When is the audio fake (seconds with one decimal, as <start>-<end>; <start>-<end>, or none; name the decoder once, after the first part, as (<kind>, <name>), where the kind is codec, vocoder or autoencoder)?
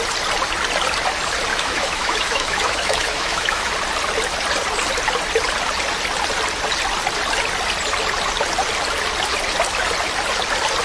1.5-3.7 (autoencoder, DAC-VAE)